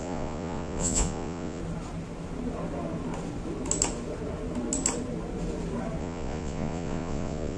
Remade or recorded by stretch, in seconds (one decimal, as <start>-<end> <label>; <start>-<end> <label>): 0.0-1.6 remade; 1.6-6.0 recorded; 6.0-7.6 remade